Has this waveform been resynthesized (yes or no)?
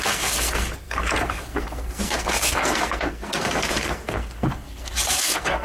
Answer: yes